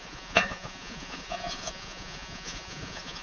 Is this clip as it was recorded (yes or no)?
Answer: no